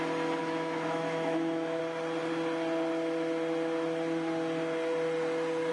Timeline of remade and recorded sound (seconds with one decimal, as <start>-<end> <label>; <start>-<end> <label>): 0.0-0.4 recorded; 0.4-1.8 remade; 1.8-5.7 recorded